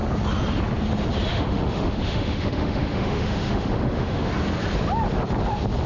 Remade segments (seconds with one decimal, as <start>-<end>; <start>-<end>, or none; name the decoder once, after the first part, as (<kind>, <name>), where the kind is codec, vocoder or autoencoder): 1.3-4.3 (autoencoder, DAC-VAE)